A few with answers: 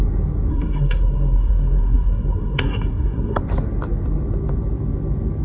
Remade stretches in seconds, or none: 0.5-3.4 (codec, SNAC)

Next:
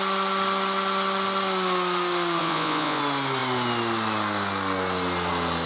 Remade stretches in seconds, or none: 2.4-3.0 (vocoder, Vocos)

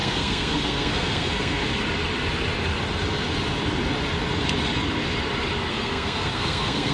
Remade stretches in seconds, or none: 0.0-1.6 (codec, SNAC); 5.7-6.9

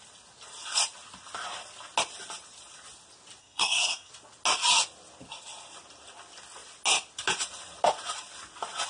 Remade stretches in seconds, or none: 3.4-4.1 (codec, SNAC)

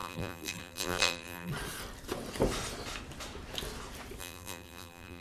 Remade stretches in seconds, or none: 0.0-1.5 (vocoder, BigVGAN v2); 4.2-5.2

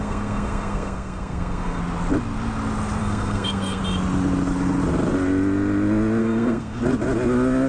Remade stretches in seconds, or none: 0.0-1.8 (codec, SNAC); 3.0-3.8; 6.2-6.8